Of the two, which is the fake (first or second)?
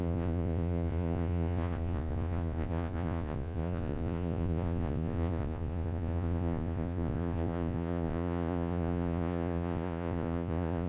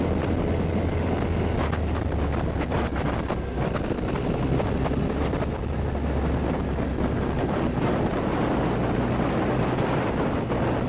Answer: first